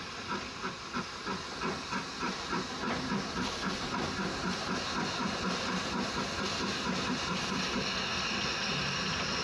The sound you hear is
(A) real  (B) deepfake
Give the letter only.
A